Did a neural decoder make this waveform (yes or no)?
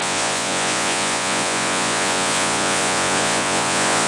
yes